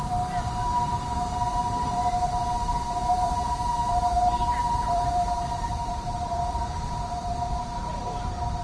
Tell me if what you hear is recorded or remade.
remade